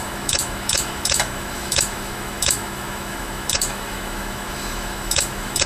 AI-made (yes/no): yes